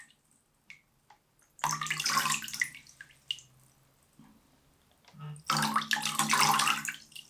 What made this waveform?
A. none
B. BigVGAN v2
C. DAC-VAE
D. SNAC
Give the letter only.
A